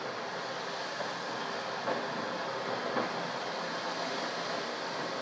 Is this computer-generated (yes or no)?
no